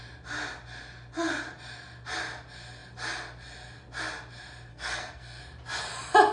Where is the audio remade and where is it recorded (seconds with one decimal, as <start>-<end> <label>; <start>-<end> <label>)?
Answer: 0.0-4.7 recorded; 4.7-5.4 remade; 5.4-6.3 recorded